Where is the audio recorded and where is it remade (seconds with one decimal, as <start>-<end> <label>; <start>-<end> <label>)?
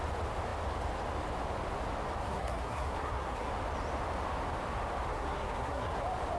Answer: 0.0-2.2 recorded; 2.2-3.5 remade; 3.5-5.1 recorded; 5.1-6.0 remade; 6.0-6.4 recorded